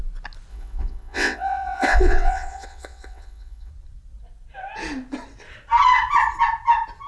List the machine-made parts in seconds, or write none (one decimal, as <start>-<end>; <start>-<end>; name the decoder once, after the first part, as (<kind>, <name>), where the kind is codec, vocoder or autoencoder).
0.5-3.7 (vocoder, WaveNeXt)